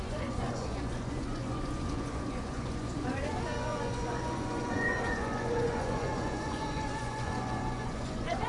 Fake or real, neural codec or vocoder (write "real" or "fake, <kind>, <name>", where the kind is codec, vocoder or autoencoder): fake, vocoder, Vocos